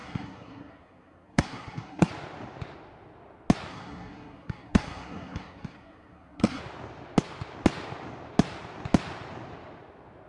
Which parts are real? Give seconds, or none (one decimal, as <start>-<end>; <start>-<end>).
2.1-3.7; 6.6-10.3